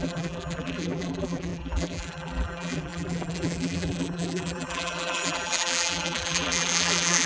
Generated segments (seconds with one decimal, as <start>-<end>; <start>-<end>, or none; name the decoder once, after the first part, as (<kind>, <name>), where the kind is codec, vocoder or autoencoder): 0.0-7.3 (vocoder, BigVGAN v2)